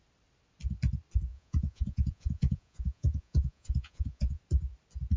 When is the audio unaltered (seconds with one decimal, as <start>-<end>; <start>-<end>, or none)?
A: 0.0-1.3; 4.4-5.2